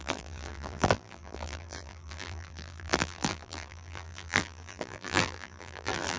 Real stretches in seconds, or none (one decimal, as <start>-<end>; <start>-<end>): none